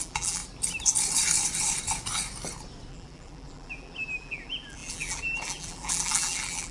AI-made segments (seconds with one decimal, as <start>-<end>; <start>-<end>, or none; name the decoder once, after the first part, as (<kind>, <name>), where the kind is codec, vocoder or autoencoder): 0.0-0.4 (vocoder, BigVGAN v2); 2.9-6.7

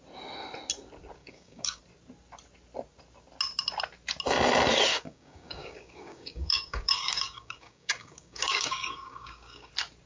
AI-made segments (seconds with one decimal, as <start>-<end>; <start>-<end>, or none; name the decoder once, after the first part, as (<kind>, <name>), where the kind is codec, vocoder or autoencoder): 1.2-1.8 (codec, DAC); 4.9-9.7

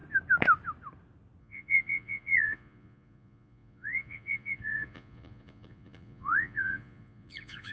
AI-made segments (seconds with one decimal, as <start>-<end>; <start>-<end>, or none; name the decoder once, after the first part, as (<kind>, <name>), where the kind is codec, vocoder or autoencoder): 1.4-7.7 (vocoder, Vocos)

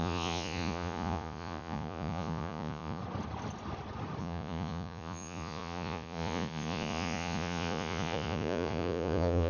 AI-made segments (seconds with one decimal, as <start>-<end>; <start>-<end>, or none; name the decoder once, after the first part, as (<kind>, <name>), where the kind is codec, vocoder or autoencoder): 0.0-3.0 (vocoder, Vocos); 4.2-9.5

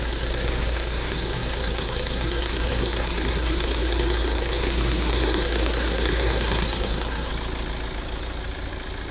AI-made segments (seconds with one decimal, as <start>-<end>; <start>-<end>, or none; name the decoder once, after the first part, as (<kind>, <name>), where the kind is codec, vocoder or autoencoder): 0.0-7.3 (codec, SNAC)